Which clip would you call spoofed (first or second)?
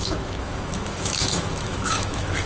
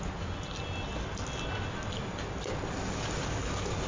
first